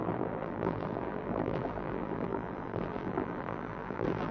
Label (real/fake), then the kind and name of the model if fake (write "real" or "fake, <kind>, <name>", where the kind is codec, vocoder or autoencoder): fake, vocoder, BigVGAN v2